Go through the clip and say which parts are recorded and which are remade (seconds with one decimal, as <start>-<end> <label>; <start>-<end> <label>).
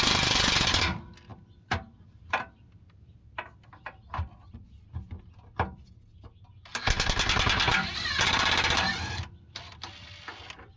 0.0-10.8 recorded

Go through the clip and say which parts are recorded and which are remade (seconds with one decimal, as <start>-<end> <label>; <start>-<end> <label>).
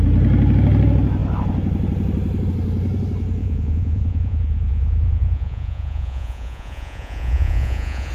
0.0-3.4 recorded; 3.4-8.1 remade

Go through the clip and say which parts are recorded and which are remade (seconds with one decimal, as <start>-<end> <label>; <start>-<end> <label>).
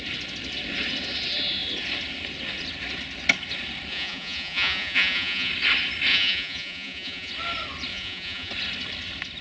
0.0-3.9 recorded; 3.9-5.5 remade; 5.5-6.1 recorded; 6.1-7.3 remade; 7.3-7.9 recorded; 7.9-8.5 remade; 8.5-9.4 recorded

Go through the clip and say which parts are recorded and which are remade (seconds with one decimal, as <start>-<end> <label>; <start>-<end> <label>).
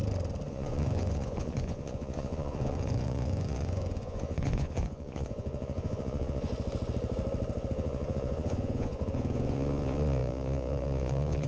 0.0-0.5 recorded; 0.5-6.5 remade; 6.5-7.7 recorded; 7.7-11.5 remade